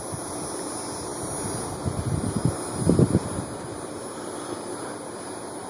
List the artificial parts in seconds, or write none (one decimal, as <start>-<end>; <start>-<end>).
none